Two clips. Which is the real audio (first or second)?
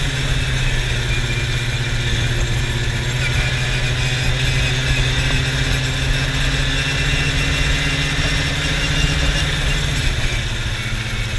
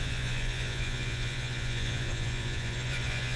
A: first